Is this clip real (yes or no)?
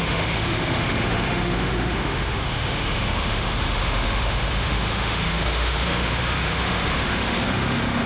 no